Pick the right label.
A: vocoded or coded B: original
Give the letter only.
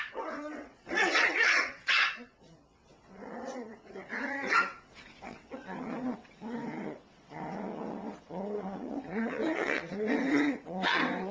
A